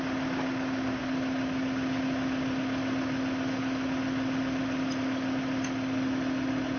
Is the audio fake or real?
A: real